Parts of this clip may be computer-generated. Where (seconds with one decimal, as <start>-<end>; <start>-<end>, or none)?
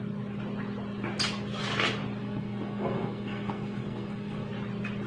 2.2-4.5